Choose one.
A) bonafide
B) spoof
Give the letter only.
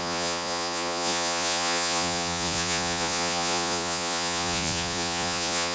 B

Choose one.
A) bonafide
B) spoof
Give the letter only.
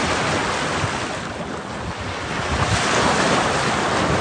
A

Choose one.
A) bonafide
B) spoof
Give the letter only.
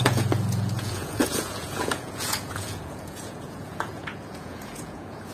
B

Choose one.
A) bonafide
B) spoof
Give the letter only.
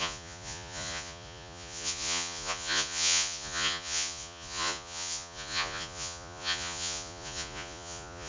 B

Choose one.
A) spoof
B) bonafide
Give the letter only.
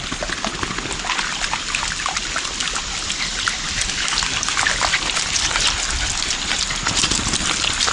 B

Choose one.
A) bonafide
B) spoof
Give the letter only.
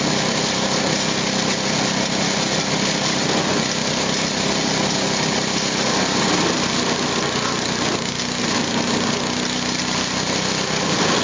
A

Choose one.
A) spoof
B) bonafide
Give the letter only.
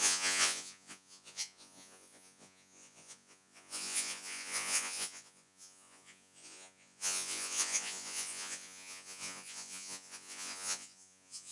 A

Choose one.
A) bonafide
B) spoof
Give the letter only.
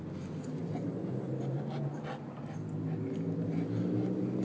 A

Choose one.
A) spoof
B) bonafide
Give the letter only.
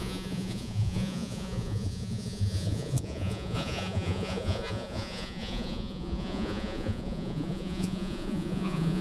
A